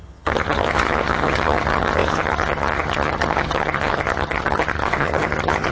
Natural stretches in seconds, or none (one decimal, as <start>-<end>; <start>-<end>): none